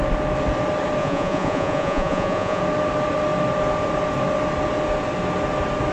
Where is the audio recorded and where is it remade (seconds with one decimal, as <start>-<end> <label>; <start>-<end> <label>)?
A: 0.0-1.0 recorded; 1.0-2.6 remade; 2.6-5.9 recorded